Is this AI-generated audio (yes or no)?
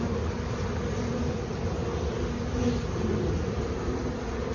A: no